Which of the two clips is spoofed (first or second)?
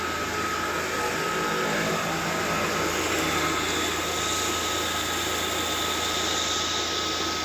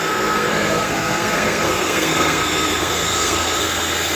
second